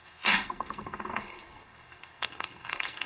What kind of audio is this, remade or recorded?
remade